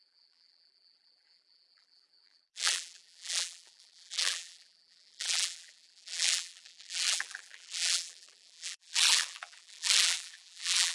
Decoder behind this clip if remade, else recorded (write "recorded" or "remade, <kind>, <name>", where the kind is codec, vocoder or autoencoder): remade, vocoder, BigVGAN v2